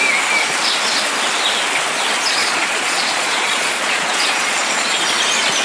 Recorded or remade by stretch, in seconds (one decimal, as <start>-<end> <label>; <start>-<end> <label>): 0.0-2.4 recorded; 2.4-5.0 remade; 5.0-5.6 recorded